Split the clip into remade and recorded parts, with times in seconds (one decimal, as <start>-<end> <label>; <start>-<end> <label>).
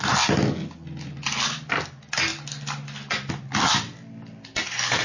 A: 0.0-5.0 recorded